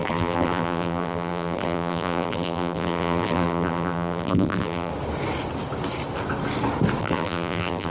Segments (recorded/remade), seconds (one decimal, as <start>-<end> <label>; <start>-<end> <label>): 0.0-4.9 remade; 4.9-7.0 recorded; 7.0-7.9 remade